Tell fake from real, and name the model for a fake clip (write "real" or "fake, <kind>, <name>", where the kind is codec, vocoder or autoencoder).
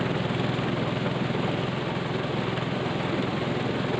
real